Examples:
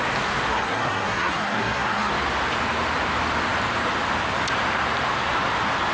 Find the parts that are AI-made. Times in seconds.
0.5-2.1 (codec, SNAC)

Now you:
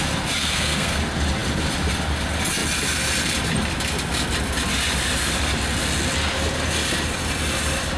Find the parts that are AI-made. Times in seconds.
0.4-1.0 (codec, SNAC)

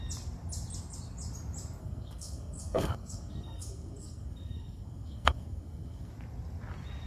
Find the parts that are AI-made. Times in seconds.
1.8-6.1 (codec, SNAC)

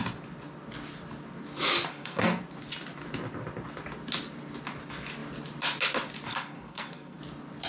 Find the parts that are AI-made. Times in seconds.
1.9-2.4 (codec, SNAC); 6.3-7.2